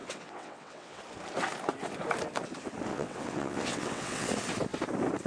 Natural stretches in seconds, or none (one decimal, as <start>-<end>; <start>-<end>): 1.0-2.9; 4.3-5.3